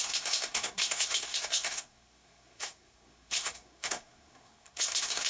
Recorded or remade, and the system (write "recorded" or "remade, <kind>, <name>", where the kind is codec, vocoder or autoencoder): remade, codec, SNAC